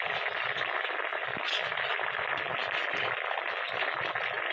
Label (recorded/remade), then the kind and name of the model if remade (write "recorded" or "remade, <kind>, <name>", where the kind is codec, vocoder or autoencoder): recorded